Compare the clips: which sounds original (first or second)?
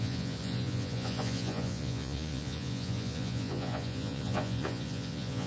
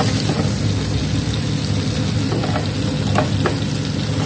second